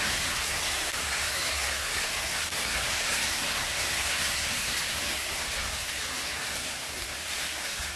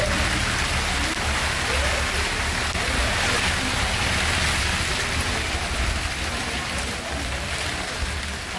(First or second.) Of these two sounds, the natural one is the second